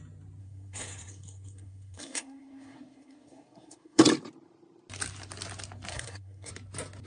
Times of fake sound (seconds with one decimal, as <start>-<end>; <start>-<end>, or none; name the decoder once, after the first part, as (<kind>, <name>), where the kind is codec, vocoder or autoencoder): 0.4-4.0 (codec, SNAC); 5.9-6.5

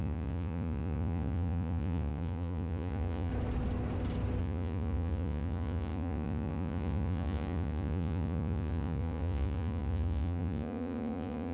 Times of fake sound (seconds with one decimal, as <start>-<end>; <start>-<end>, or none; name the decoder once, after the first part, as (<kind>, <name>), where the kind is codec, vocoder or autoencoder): 0.0-3.3 (vocoder, Vocos); 4.4-11.5